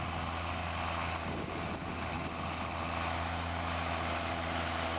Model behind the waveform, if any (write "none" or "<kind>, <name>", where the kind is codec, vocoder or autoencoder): none